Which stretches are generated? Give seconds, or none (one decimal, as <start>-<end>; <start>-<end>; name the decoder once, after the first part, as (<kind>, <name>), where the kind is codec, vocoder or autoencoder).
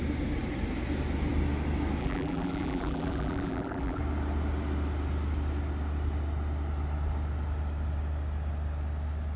2.0-4.0 (vocoder, BigVGAN v2)